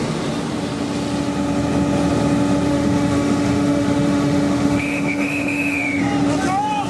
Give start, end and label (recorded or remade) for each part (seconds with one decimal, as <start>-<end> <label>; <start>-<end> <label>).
0.0-2.7 recorded; 2.7-6.0 remade; 6.0-6.9 recorded